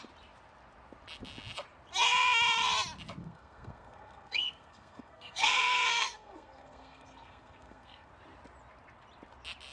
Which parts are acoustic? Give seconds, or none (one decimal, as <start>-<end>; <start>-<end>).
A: 0.0-3.2; 8.1-9.7